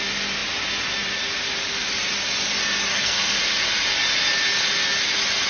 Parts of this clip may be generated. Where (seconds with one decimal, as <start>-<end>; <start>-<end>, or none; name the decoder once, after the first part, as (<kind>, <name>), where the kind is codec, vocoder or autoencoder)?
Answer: 2.9-3.4 (codec, SNAC)